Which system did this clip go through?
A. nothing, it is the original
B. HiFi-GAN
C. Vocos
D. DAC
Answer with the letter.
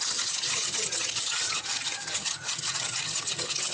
B